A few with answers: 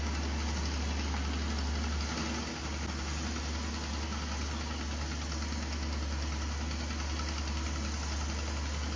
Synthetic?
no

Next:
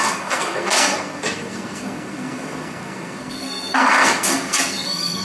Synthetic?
yes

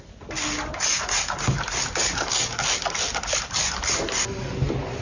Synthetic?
no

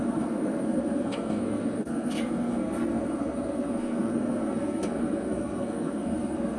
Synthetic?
yes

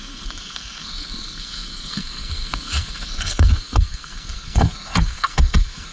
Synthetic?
yes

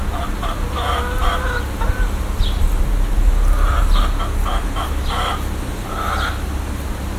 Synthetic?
no